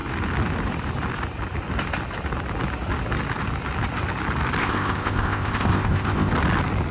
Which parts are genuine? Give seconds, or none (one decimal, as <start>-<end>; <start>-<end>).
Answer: 0.0-4.6; 6.3-6.9